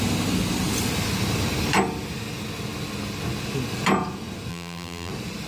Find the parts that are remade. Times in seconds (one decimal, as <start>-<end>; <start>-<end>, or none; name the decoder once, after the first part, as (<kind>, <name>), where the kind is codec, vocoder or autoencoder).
4.5-5.1 (vocoder, BigVGAN v2)

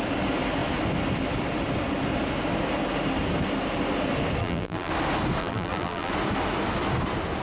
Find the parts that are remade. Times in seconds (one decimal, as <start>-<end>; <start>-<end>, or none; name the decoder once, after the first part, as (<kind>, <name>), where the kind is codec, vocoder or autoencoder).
4.4-4.9 (vocoder, BigVGAN v2); 5.4-6.1

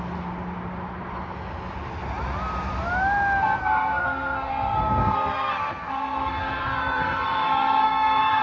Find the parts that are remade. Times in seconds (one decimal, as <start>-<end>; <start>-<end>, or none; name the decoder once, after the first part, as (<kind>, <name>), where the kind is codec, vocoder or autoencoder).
3.6-8.4 (codec, SNAC)

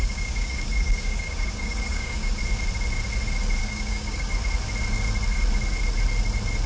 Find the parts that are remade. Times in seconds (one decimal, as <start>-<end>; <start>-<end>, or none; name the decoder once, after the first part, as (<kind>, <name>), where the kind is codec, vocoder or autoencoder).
0.0-2.4 (codec, DAC); 3.6-4.3